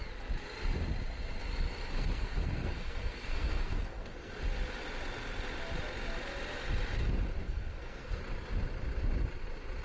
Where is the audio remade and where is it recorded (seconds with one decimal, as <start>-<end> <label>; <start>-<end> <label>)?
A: 0.0-1.8 recorded; 1.8-4.3 remade; 4.3-7.4 recorded; 7.4-8.2 remade; 8.2-9.8 recorded